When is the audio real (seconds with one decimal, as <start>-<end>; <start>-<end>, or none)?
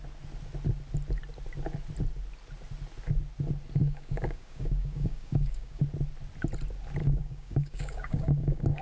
0.0-3.8; 5.8-7.0